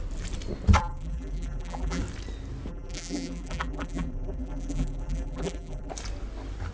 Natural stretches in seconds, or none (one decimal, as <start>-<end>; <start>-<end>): 0.0-0.8; 2.0-2.7; 5.9-6.7